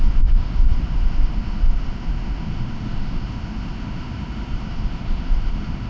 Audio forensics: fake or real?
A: fake